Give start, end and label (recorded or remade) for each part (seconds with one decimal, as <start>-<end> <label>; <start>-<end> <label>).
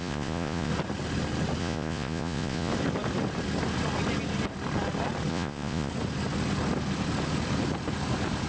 0.0-0.7 remade; 0.7-1.6 recorded; 1.6-2.7 remade; 2.7-5.3 recorded; 5.3-5.9 remade; 5.9-8.5 recorded